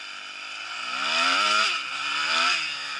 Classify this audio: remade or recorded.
recorded